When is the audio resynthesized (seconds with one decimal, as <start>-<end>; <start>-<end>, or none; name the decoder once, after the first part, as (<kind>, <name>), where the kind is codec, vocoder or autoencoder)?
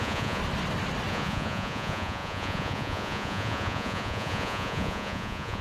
0.0-0.4 (vocoder, Vocos); 1.1-5.6